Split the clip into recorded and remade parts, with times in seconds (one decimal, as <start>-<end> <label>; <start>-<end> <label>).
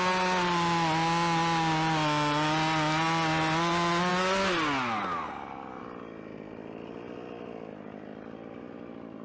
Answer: 0.0-9.2 recorded